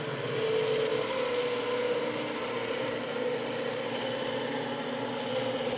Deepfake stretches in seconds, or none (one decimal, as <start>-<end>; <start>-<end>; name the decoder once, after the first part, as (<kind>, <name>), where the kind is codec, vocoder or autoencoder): none